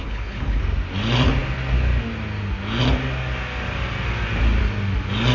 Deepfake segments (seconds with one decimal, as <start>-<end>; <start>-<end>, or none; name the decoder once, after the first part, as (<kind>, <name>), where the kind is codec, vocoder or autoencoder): 0.0-0.6 (codec, HILCodec)